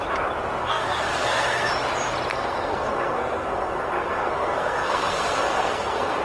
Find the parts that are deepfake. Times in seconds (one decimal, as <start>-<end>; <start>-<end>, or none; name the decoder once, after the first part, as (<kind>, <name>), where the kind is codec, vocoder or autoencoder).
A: 0.6-1.7 (codec, SNAC); 2.3-6.2